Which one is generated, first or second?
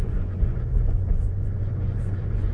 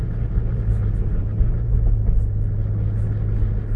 first